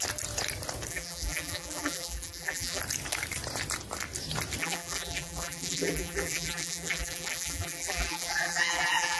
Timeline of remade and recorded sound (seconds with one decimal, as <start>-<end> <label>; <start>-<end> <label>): 0.0-0.9 recorded; 0.9-2.8 remade; 2.8-4.6 recorded; 4.6-9.2 remade